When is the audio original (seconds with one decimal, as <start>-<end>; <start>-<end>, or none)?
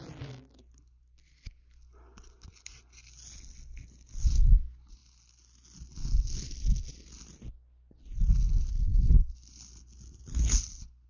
0.0-11.1